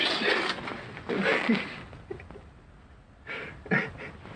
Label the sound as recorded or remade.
recorded